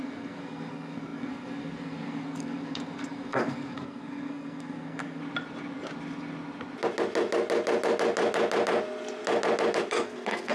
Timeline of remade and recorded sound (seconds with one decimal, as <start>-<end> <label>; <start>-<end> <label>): 0.0-5.2 remade; 5.2-9.9 recorded; 9.9-10.5 remade